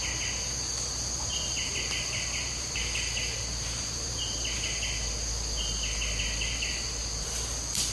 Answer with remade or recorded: remade